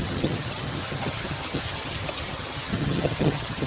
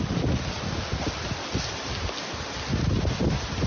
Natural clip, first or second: second